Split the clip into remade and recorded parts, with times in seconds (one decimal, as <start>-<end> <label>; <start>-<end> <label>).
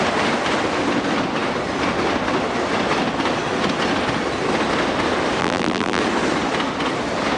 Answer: 0.0-5.4 recorded; 5.4-6.0 remade; 6.0-7.4 recorded